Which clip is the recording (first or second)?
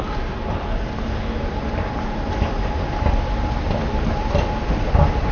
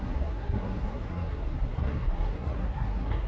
first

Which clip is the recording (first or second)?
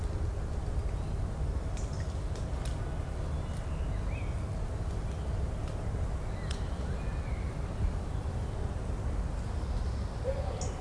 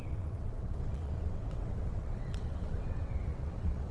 first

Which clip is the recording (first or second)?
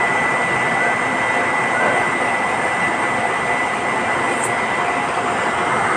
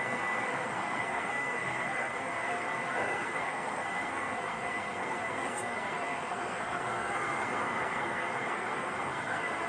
first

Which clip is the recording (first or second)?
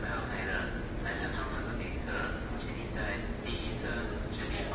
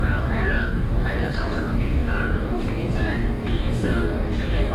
first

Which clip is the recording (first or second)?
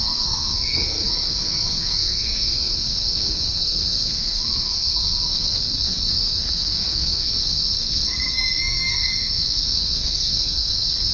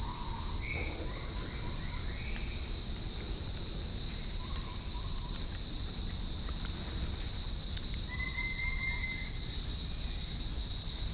second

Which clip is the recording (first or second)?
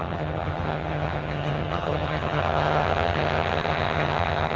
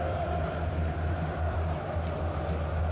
second